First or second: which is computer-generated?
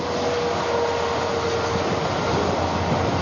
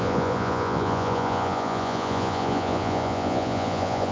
second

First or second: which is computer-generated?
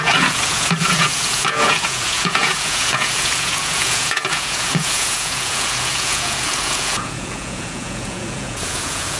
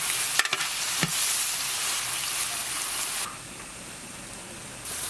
first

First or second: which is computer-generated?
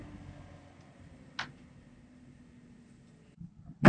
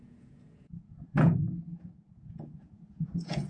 second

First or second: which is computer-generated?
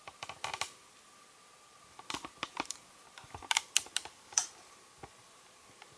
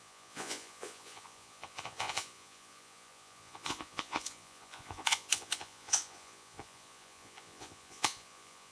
second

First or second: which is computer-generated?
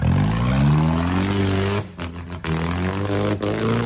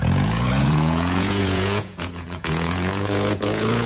second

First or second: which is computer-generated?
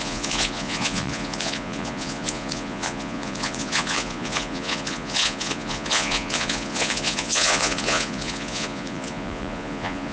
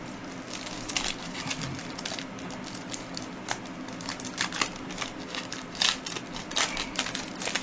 first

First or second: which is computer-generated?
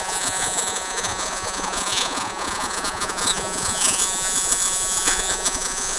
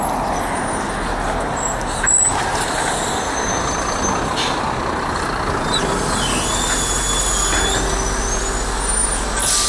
first